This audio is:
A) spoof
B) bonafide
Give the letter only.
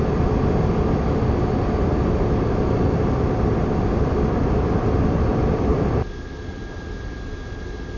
B